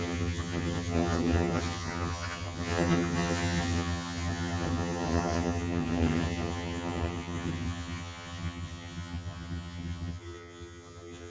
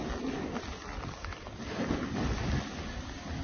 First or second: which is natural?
second